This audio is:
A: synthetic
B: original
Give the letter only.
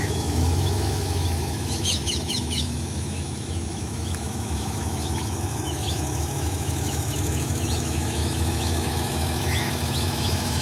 A